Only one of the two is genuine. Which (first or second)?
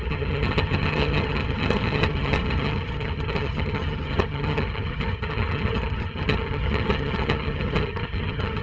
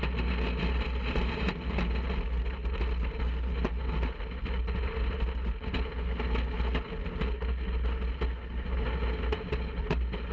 second